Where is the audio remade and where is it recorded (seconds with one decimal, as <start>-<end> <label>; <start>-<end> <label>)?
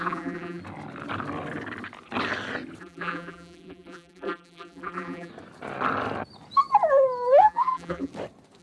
0.0-0.6 remade; 0.6-2.8 recorded; 2.8-5.3 remade; 5.3-7.4 recorded; 7.4-8.1 remade; 8.1-8.6 recorded